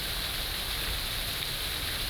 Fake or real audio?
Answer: real